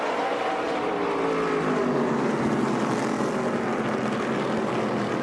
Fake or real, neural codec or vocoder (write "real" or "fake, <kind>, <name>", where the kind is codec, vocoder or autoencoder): real